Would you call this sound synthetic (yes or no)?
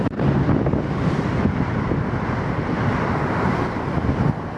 no